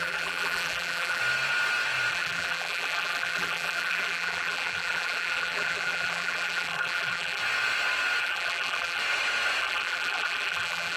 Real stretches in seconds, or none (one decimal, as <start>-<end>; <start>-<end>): 1.2-2.1; 7.4-8.2; 9.0-9.6